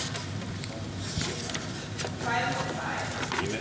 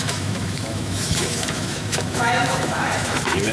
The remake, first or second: second